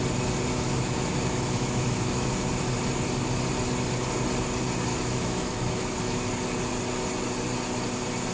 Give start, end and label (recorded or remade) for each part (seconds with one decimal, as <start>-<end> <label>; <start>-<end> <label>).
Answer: 0.0-0.5 recorded; 0.5-2.6 remade; 2.6-4.9 recorded; 4.9-6.3 remade; 6.3-8.3 recorded